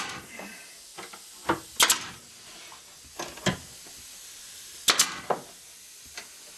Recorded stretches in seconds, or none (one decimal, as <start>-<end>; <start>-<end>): 0.0-6.6